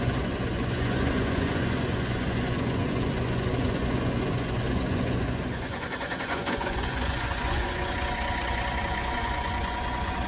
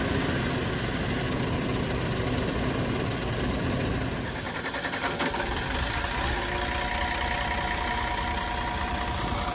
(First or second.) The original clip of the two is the second